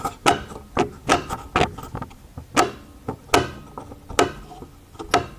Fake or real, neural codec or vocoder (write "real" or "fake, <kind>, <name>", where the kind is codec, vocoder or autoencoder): real